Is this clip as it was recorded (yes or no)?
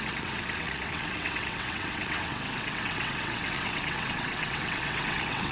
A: no